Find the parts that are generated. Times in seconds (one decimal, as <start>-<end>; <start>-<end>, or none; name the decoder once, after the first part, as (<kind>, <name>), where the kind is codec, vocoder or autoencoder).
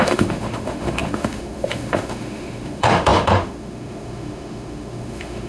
0.0-5.5 (autoencoder, DAC-VAE)